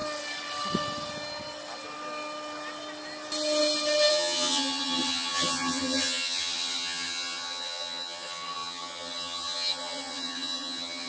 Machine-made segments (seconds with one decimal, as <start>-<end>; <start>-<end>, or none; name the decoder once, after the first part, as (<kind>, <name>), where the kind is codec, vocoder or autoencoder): 4.1-11.1 (vocoder, HiFi-GAN)